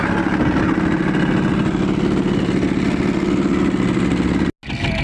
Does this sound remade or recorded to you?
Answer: recorded